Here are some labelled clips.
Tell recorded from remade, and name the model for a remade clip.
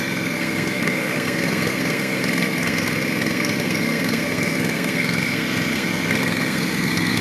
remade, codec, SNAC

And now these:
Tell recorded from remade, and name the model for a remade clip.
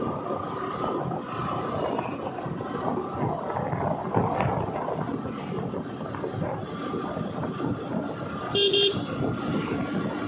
recorded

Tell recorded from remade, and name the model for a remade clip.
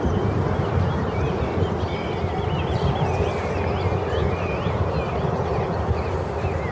recorded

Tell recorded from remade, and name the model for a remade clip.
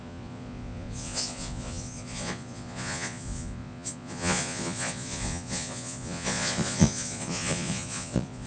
remade, vocoder, Vocos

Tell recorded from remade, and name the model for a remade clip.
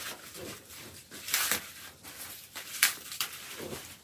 remade, vocoder, BigVGAN v2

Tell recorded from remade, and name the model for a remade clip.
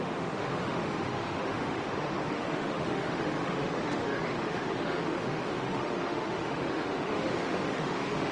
remade, autoencoder, DAC-VAE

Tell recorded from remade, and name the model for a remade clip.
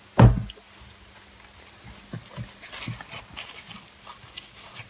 recorded